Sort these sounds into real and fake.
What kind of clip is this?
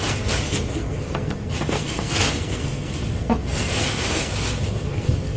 fake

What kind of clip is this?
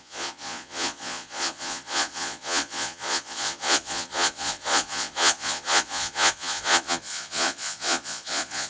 fake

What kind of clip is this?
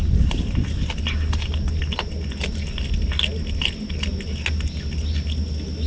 real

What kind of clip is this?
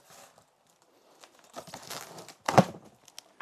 real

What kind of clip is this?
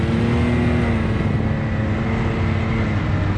real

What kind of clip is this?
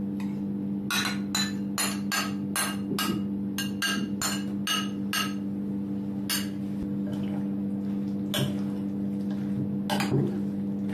real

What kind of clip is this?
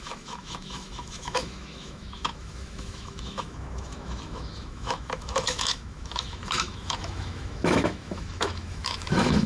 fake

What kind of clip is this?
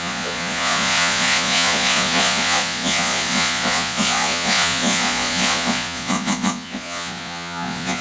fake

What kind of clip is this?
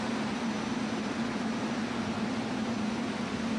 real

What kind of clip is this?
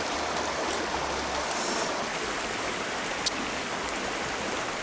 real